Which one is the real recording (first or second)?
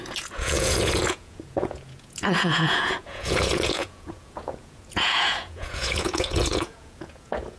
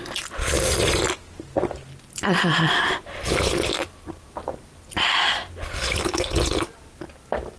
second